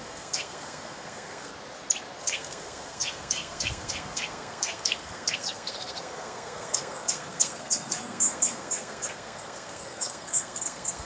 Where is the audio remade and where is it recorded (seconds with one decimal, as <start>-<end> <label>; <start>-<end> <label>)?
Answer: 0.0-1.5 remade; 1.5-2.2 recorded; 2.2-11.1 remade